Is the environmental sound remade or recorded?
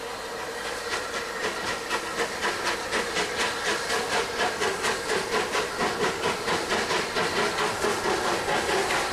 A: recorded